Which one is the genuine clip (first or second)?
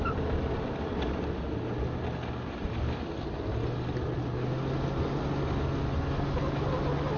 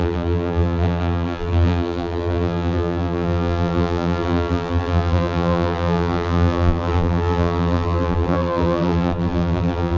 first